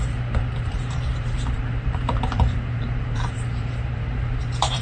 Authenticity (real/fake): fake